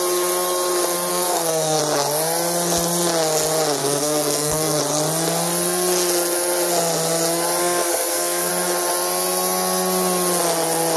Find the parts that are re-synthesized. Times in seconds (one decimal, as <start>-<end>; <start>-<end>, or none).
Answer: 1.1-1.8; 3.8-4.8; 7.6-8.5